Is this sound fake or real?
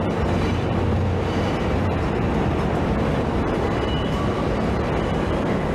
real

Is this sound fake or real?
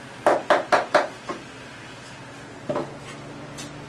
real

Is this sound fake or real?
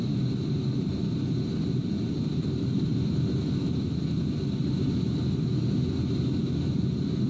real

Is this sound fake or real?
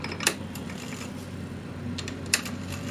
real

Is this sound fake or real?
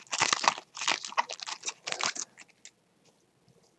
real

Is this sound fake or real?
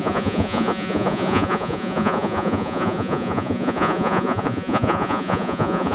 fake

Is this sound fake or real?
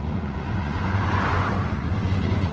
fake